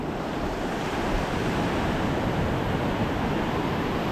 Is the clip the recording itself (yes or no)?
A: yes